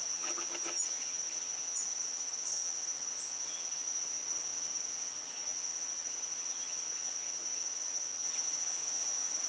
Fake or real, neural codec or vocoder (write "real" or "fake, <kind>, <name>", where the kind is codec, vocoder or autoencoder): fake, vocoder, HiFi-GAN